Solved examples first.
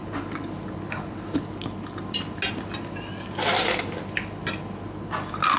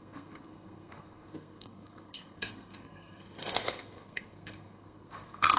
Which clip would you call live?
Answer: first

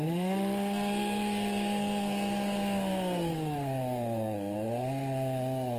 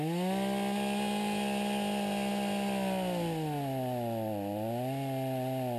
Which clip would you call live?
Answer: second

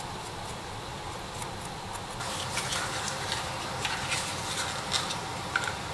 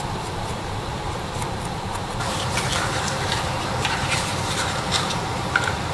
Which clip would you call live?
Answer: first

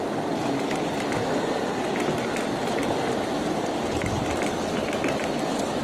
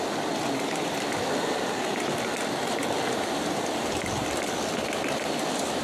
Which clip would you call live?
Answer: first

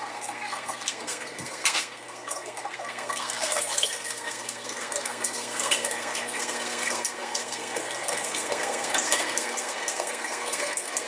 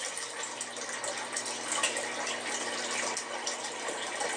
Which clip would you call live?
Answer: second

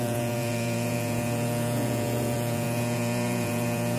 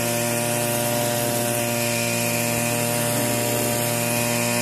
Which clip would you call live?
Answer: second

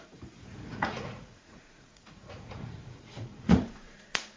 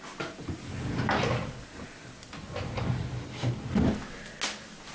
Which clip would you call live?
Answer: second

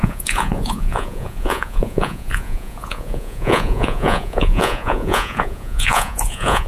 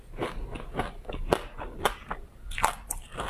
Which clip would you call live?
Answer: second